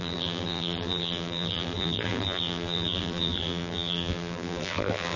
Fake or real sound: fake